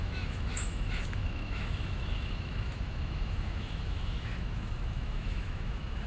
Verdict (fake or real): fake